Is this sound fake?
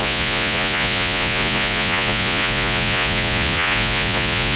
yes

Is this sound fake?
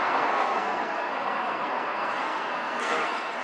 yes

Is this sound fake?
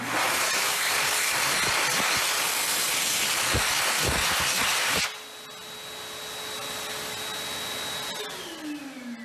no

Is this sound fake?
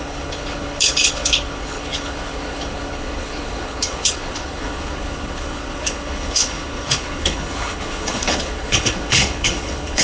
yes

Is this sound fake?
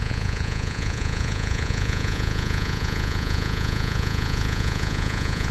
yes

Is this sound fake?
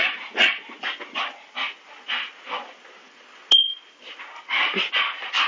no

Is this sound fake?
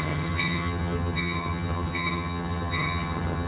yes